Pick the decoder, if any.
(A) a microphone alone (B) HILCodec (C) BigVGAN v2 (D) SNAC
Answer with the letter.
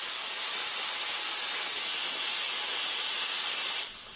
A